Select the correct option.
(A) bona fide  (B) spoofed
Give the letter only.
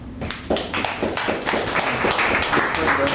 A